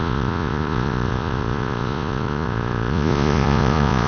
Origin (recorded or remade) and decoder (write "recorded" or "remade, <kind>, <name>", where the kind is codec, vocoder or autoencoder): remade, vocoder, Vocos